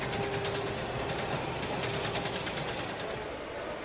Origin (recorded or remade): recorded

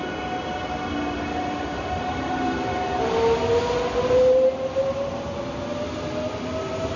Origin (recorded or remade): recorded